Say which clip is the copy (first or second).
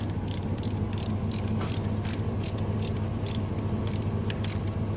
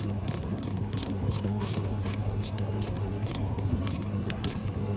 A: second